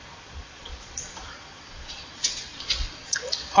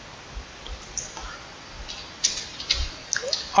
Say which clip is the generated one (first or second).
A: first